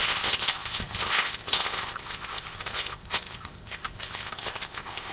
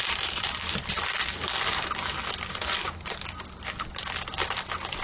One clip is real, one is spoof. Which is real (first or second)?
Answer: second